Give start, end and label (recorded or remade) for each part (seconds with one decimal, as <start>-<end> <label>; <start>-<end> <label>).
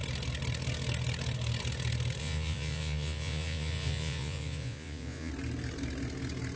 0.0-2.2 recorded; 2.2-5.3 remade; 5.3-6.6 recorded